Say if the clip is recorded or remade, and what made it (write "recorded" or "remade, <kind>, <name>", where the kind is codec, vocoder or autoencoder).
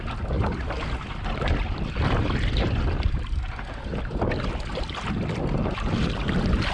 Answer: recorded